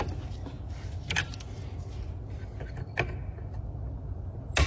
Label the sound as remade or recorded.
recorded